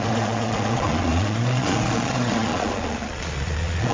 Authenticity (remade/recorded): remade